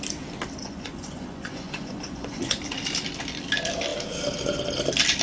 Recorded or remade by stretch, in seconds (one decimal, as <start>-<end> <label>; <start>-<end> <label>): 0.0-0.6 recorded; 0.6-2.6 remade; 2.6-5.2 recorded